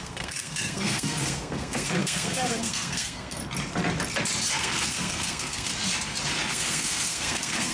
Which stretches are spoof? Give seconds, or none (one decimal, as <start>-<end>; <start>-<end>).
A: 0.0-3.4; 4.5-5.7; 6.5-7.7